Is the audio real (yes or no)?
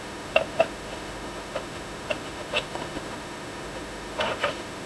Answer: no